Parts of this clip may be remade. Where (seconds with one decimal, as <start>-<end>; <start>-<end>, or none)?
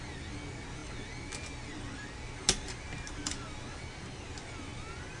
none